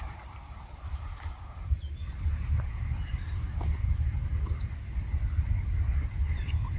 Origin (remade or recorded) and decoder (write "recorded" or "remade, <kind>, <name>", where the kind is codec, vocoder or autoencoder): recorded